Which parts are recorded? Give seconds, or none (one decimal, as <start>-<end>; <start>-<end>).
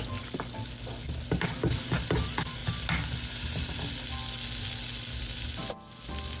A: 0.0-6.4